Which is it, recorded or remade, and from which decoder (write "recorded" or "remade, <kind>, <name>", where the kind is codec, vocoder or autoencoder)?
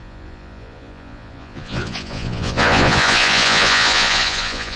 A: remade, vocoder, Vocos